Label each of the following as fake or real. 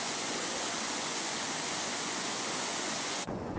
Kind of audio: fake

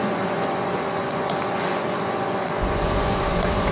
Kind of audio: fake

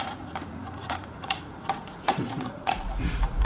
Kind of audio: fake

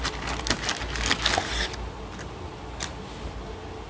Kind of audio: real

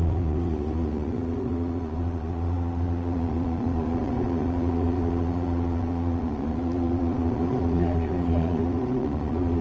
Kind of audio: fake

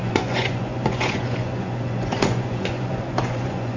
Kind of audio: fake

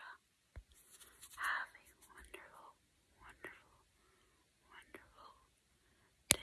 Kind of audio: real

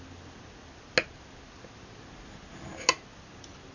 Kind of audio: real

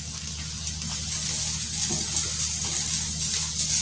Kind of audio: real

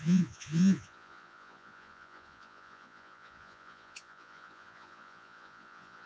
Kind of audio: fake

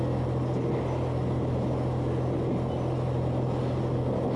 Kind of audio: real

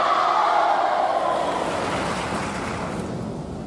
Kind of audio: real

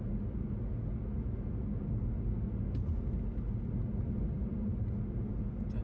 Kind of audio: real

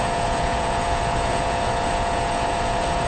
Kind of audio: fake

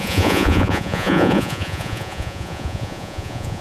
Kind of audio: fake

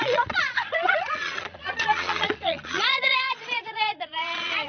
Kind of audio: fake